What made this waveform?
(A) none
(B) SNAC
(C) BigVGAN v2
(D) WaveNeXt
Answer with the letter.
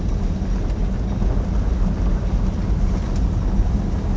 A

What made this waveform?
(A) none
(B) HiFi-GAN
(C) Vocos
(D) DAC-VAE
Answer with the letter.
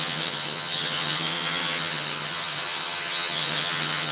B